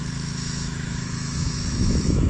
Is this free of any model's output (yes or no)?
no